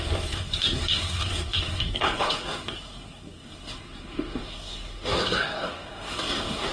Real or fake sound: fake